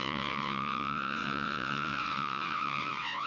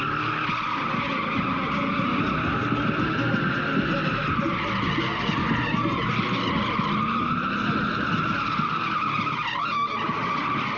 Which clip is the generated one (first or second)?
first